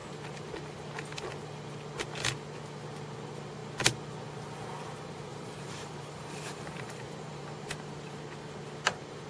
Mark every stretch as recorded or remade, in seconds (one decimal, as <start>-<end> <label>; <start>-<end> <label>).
0.0-5.3 recorded; 5.3-8.2 remade; 8.2-9.3 recorded